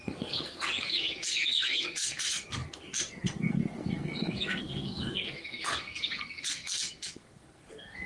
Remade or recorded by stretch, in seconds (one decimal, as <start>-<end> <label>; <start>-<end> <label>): 0.0-8.1 remade